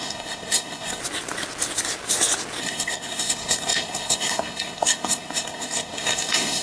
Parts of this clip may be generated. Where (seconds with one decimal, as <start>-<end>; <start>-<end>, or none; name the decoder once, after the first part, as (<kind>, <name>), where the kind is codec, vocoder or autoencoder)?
0.0-1.0 (codec, SNAC); 2.6-6.6